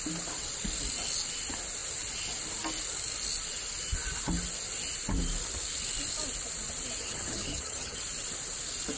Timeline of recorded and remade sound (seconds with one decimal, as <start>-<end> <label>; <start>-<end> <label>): 0.0-7.0 recorded; 7.0-8.0 remade; 8.0-9.0 recorded